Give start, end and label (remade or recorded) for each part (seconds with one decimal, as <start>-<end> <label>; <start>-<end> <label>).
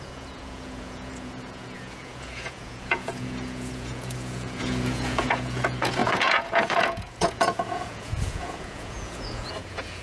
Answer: 0.0-10.0 remade